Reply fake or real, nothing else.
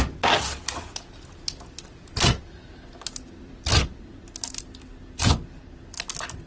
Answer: real